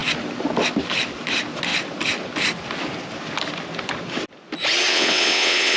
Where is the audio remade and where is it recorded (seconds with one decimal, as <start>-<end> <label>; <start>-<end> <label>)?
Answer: 0.0-4.9 recorded; 4.9-5.8 remade

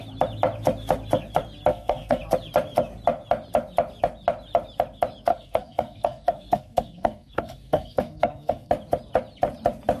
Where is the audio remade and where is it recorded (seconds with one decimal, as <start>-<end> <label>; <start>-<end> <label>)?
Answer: 0.0-1.7 recorded; 1.7-2.2 remade; 2.2-5.3 recorded; 5.3-8.7 remade; 8.7-10.0 recorded